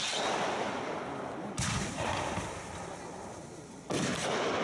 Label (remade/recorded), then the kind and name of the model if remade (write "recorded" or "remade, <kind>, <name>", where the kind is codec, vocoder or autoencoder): recorded